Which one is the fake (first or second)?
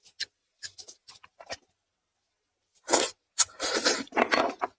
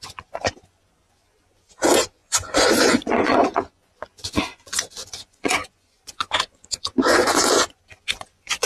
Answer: second